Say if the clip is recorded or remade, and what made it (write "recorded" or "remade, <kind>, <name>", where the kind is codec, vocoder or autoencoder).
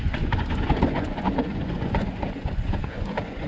remade, vocoder, Vocos